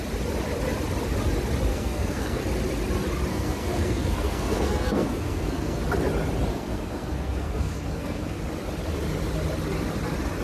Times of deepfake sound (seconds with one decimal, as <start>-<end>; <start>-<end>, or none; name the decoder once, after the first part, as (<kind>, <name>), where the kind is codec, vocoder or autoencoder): 1.7-2.4 (codec, SNAC); 3.3-5.8; 6.5-8.4